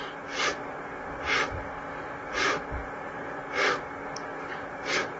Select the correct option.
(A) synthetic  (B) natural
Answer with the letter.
A